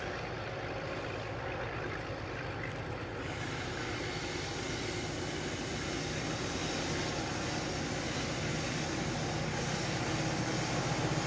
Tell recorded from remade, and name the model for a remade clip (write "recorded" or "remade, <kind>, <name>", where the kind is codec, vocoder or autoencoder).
recorded